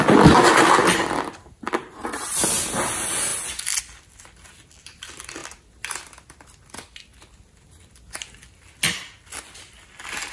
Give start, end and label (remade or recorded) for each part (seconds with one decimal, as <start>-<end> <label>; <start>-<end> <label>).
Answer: 0.0-10.3 recorded